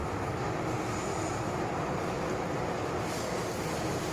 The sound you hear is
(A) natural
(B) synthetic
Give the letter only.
A